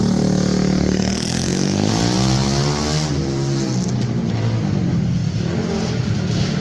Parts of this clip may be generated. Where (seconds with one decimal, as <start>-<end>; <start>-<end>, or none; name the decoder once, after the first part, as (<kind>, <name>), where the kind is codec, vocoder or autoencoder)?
0.8-1.9 (codec, SNAC)